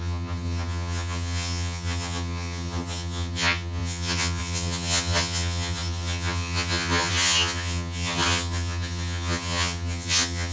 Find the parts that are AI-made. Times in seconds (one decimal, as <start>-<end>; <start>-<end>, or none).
0.0-10.5